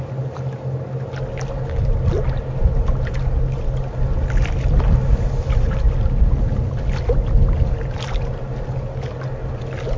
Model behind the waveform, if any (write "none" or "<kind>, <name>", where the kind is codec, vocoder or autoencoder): none